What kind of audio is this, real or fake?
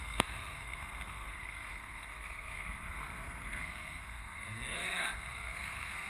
fake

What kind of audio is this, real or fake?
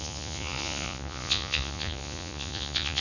fake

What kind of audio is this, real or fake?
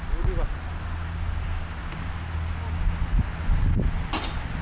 real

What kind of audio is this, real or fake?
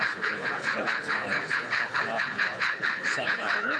fake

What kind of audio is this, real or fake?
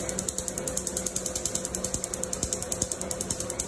real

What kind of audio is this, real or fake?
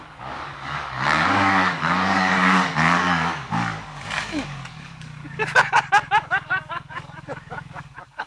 fake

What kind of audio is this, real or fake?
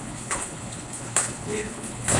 fake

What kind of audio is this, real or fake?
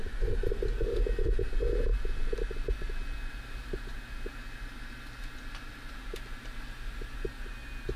real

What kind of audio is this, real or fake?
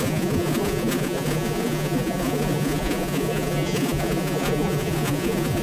fake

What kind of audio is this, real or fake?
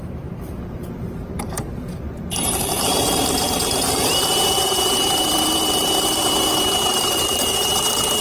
fake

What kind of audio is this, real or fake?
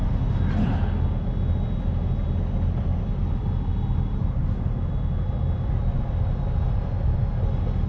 real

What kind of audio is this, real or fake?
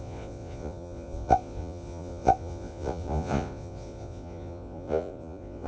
fake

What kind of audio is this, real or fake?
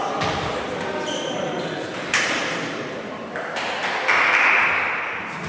real